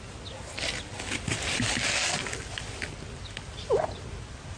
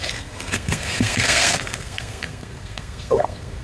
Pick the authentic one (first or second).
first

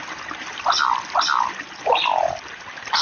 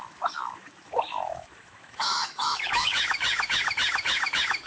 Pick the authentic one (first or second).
first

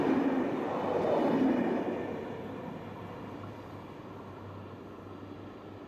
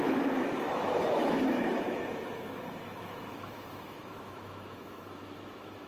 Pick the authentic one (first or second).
first